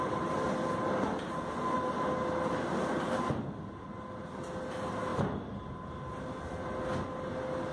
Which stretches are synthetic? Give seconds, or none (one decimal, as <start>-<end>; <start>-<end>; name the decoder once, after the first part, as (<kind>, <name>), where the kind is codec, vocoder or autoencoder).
none